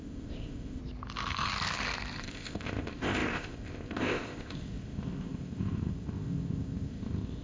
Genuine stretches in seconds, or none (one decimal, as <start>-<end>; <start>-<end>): 0.8-2.2